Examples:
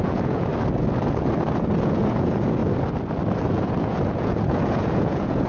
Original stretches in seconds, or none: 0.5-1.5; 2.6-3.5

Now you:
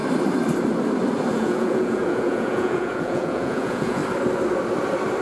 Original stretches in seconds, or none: 0.0-1.3; 4.0-5.2

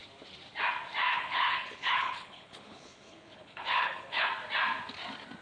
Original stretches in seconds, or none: 0.0-1.1; 4.3-5.4

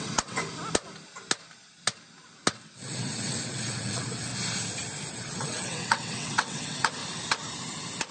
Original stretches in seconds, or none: 0.4-2.5; 4.3-5.1; 7.0-8.1

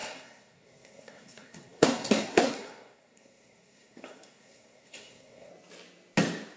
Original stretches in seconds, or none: 5.5-6.6

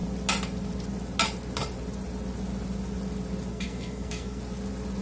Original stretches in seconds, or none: 0.0-3.5; 4.4-5.0

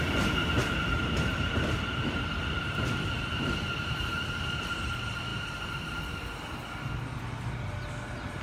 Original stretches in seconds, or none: 0.0-0.4; 2.8-5.3; 6.0-8.4

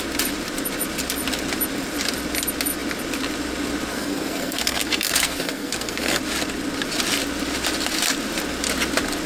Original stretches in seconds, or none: 0.0-3.9; 6.2-9.3